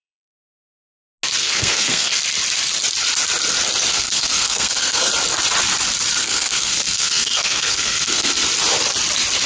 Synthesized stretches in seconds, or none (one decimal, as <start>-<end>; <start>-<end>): 0.0-0.8; 1.4-2.1; 3.9-5.1; 6.2-8.3